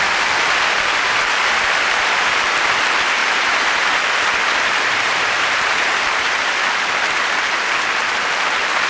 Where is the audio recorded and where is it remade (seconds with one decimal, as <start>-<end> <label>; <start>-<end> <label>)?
0.0-3.2 recorded; 3.2-6.5 remade; 6.5-8.9 recorded